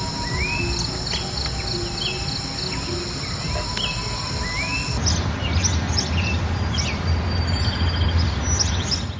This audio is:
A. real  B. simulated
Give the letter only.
A